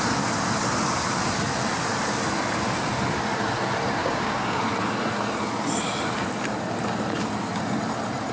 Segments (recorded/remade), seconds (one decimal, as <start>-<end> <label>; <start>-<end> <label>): 0.0-4.0 recorded; 4.0-4.6 remade; 4.6-8.3 recorded